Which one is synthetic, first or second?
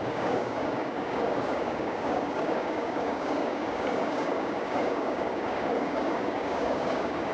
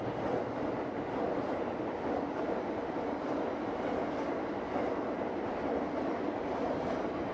first